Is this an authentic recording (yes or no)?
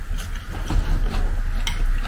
yes